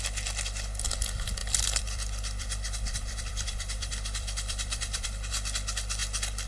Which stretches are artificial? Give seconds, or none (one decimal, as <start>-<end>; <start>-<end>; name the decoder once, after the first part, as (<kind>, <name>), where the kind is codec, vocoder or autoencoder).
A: 1.4-5.3 (vocoder, BigVGAN v2)